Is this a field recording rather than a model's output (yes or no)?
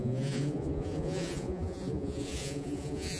no